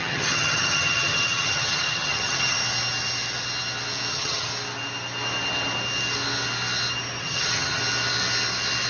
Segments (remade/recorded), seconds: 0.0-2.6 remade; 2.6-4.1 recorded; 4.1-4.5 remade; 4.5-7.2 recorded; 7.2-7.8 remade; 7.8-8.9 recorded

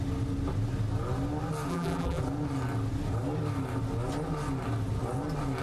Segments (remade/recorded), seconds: 0.0-1.7 recorded; 1.7-2.2 remade; 2.2-5.6 recorded

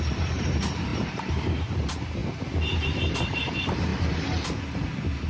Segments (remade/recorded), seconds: 0.0-2.2 remade; 2.2-3.0 recorded; 3.0-3.9 remade; 3.9-4.6 recorded; 4.6-5.3 remade

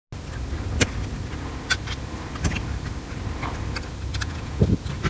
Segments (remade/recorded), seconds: 0.0-4.1 recorded; 4.1-4.6 remade; 4.6-5.1 recorded

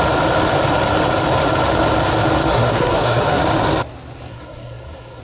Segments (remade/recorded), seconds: 0.0-2.5 recorded; 2.5-3.4 remade; 3.4-4.3 recorded; 4.3-5.2 remade